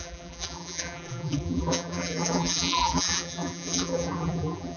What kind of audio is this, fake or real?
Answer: fake